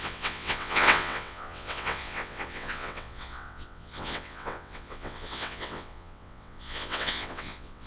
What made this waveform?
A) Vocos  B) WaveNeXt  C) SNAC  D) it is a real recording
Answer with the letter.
B